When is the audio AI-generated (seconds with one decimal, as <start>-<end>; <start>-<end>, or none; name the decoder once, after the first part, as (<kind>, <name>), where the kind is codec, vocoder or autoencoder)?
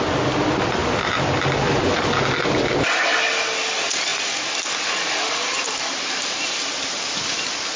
none